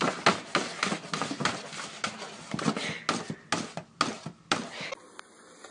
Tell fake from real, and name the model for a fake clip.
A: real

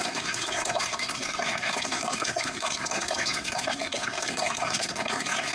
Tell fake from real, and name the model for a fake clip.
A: fake, codec, SNAC